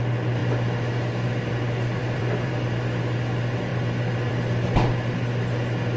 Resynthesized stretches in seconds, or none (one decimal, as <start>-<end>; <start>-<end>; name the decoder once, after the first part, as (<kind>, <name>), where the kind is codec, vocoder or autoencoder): 2.0-2.5 (vocoder, BigVGAN v2)